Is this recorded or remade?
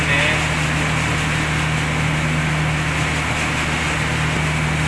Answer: recorded